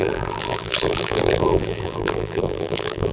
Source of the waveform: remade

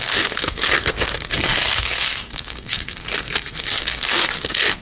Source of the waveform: remade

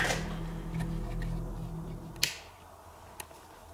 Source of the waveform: recorded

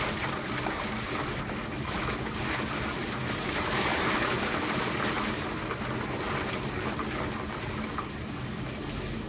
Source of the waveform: recorded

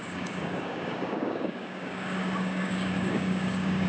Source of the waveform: remade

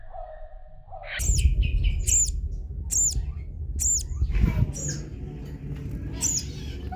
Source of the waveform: recorded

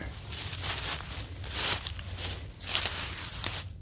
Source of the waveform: recorded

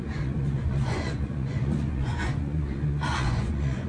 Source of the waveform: remade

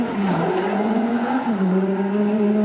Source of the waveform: remade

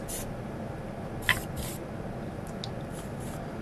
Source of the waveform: recorded